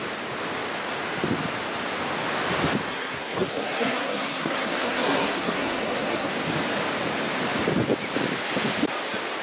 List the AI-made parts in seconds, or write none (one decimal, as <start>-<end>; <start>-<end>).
2.9-6.3